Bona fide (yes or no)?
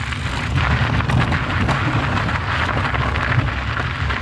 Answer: yes